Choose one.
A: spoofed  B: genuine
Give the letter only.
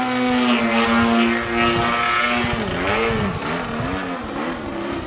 B